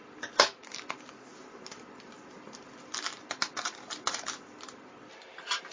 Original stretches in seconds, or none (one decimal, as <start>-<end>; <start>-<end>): 0.0-5.7